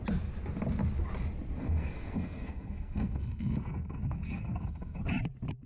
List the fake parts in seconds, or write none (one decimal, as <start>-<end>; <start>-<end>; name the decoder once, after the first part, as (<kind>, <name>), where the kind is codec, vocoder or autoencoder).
1.6-5.0 (codec, SNAC)